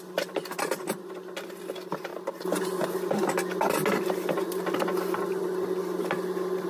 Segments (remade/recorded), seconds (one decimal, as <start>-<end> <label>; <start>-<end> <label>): 0.0-6.7 recorded